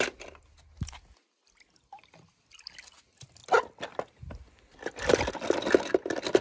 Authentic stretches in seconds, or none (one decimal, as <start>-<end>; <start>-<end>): 0.0-3.4; 5.3-6.4